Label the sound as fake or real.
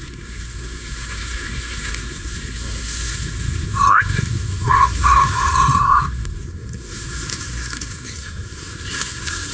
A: fake